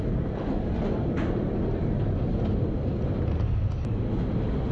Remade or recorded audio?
recorded